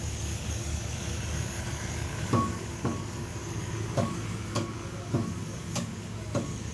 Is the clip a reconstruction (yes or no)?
yes